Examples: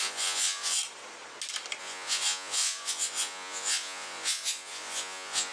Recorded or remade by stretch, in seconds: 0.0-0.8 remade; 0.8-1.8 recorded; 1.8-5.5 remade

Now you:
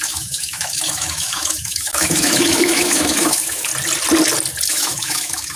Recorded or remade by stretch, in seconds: 0.0-3.7 remade; 3.7-4.7 recorded; 4.7-5.6 remade

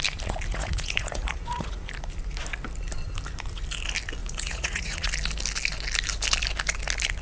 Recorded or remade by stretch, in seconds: 0.0-0.5 recorded; 0.5-1.9 remade; 1.9-4.2 recorded; 4.2-5.1 remade; 5.1-7.2 recorded

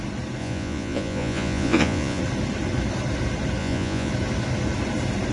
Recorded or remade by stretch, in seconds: 0.0-0.4 recorded; 0.4-2.2 remade; 2.2-3.6 recorded; 3.6-4.1 remade; 4.1-5.3 recorded

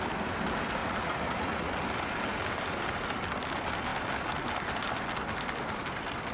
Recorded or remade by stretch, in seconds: 0.0-0.8 recorded; 0.8-1.7 remade; 1.7-6.3 recorded

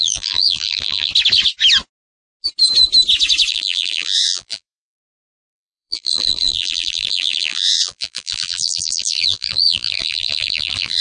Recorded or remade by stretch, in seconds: 0.0-1.1 remade; 1.1-3.5 recorded; 3.5-11.0 remade

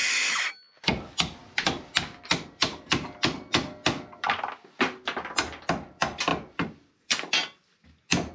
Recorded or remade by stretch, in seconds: 0.0-8.3 recorded

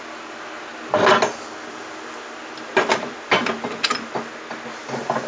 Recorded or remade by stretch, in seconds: 0.0-5.3 recorded